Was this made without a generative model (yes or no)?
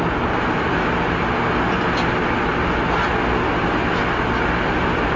yes